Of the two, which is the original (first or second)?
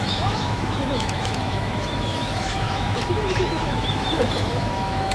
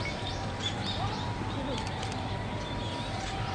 second